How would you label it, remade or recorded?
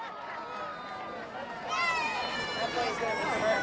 recorded